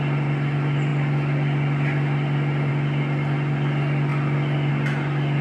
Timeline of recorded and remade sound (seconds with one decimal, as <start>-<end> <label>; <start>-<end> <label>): 0.0-5.4 recorded

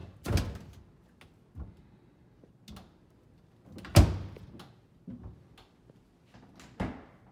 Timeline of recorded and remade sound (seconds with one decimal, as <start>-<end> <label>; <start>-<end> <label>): 0.0-7.3 recorded

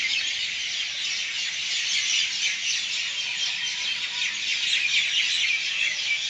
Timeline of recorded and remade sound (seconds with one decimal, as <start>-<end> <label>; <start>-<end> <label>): 0.0-6.3 recorded

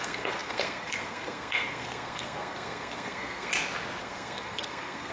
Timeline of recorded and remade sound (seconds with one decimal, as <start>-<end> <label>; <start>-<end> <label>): 0.0-3.5 remade; 3.5-4.0 recorded; 4.0-5.1 remade

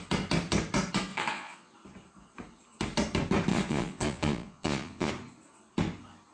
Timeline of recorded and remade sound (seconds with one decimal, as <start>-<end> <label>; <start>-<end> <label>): 0.0-1.1 recorded; 1.1-1.7 remade; 1.7-3.5 recorded; 3.5-5.1 remade; 5.1-6.3 recorded

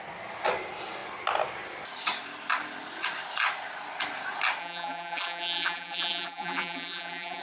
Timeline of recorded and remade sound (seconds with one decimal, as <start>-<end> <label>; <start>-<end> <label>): 0.0-4.6 recorded; 4.6-7.4 remade

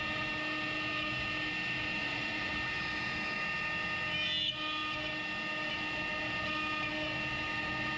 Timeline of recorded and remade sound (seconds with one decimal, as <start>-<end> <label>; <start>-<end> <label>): 0.0-2.0 recorded; 2.0-2.5 remade; 2.5-8.0 recorded

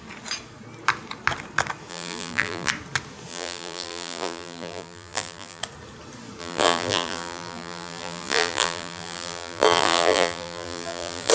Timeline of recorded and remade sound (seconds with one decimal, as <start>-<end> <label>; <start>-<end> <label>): 0.0-1.9 recorded; 1.9-2.7 remade; 2.7-3.3 recorded; 3.3-5.6 remade; 5.6-6.4 recorded; 6.4-11.3 remade